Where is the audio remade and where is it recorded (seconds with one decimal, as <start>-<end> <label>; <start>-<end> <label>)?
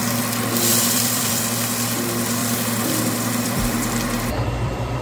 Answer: 0.0-0.7 recorded; 0.7-1.4 remade; 1.4-2.4 recorded; 2.4-5.0 remade